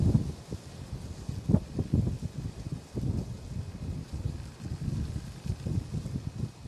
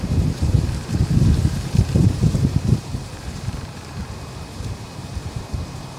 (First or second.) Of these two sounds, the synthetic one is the second